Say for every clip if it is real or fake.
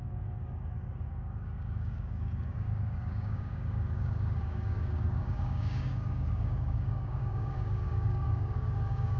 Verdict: fake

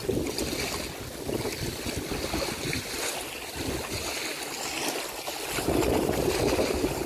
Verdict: real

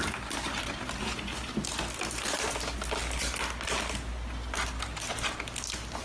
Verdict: real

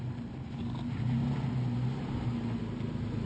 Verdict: real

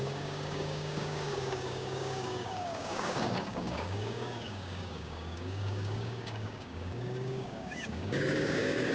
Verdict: fake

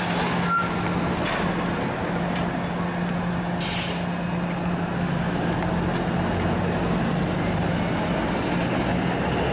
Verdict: real